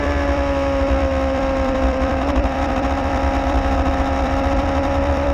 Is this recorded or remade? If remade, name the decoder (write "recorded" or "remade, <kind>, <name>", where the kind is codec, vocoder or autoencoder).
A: remade, vocoder, BigVGAN v2